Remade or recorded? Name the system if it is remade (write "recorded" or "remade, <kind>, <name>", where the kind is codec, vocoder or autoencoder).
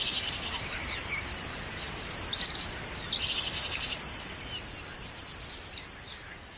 recorded